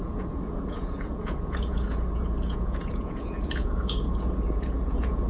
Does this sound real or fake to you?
fake